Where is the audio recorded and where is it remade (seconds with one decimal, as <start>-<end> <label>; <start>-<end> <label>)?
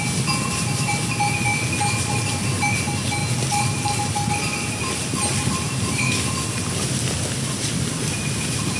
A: 0.0-8.8 recorded